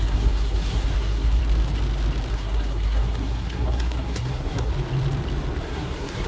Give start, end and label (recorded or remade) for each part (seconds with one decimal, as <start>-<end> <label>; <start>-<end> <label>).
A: 0.0-1.4 remade; 1.4-2.3 recorded; 2.3-4.7 remade; 4.7-5.6 recorded; 5.6-6.3 remade